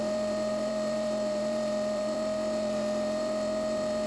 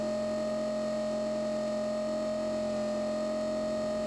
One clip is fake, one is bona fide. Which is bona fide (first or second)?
second